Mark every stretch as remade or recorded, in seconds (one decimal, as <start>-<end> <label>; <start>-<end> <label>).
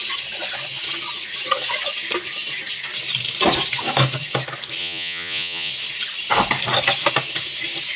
0.0-4.8 recorded; 4.8-5.7 remade; 5.7-8.0 recorded